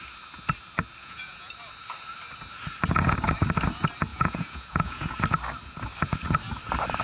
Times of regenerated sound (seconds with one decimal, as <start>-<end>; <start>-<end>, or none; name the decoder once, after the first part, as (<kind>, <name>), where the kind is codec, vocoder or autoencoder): 1.0-1.5 (vocoder, Vocos); 4.1-5.2